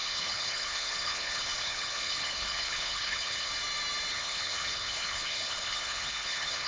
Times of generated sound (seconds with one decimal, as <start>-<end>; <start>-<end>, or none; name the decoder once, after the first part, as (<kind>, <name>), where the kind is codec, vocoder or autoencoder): 0.0-3.5 (codec, HILCodec); 4.1-6.7